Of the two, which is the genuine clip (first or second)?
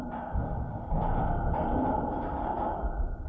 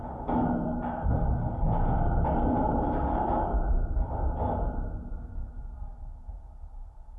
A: second